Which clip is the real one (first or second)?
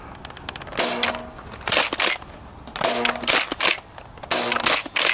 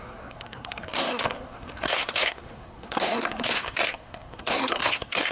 first